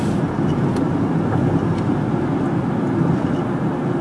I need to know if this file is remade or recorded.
recorded